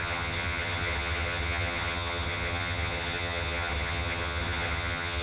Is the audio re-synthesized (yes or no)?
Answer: yes